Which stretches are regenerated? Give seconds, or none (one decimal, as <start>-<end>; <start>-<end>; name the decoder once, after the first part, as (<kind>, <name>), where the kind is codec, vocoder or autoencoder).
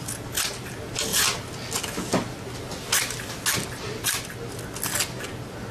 none